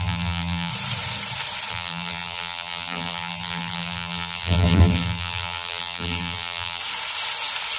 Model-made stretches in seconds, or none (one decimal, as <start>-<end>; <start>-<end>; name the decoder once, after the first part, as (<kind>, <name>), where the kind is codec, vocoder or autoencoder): 0.0-0.7 (vocoder, BigVGAN v2); 1.7-6.8